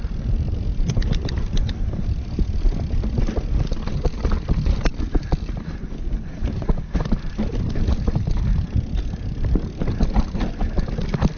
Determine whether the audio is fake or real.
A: real